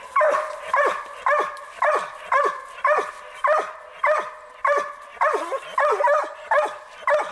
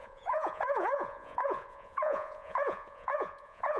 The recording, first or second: first